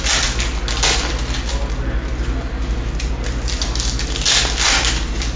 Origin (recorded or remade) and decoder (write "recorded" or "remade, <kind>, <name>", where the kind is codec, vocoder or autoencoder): recorded